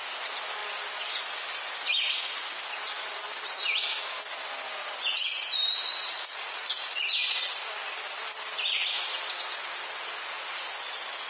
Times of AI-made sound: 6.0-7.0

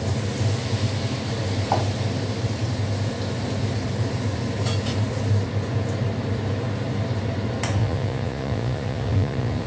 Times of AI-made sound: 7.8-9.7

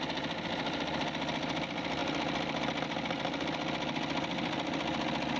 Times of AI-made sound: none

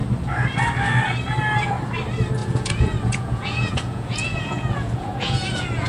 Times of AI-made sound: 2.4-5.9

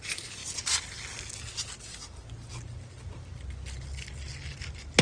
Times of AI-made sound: none

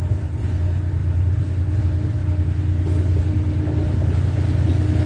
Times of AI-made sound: none